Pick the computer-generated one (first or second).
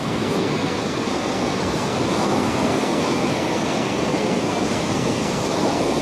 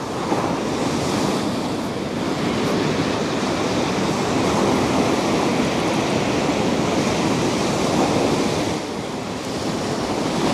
first